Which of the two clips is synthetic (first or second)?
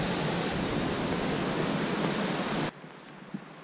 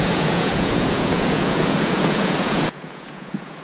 second